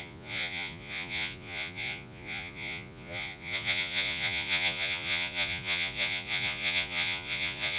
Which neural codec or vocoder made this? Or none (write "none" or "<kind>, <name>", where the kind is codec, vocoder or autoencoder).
vocoder, Vocos